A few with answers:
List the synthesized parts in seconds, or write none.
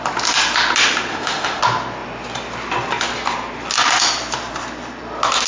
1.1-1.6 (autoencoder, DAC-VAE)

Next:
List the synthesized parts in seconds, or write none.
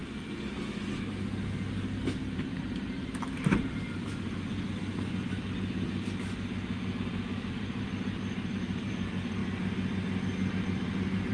2.2-4.5 (vocoder, BigVGAN v2); 7.0-9.4; 10.6-11.3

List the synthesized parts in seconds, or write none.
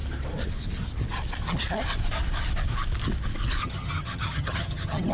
3.6-5.1 (vocoder, HiFi-GAN)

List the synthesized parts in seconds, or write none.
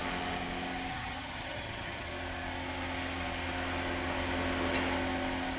0.9-2.1 (vocoder, HiFi-GAN)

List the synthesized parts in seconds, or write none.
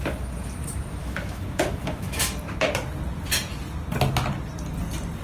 1.0-2.2 (autoencoder, DAC-VAE)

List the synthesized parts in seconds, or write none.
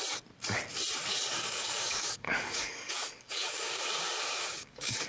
1.4-3.8 (codec, DAC); 4.5-5.1